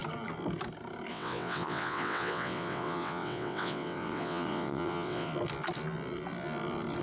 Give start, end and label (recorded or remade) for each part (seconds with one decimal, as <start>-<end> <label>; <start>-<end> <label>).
0.0-1.1 recorded; 1.1-5.3 remade; 5.3-7.0 recorded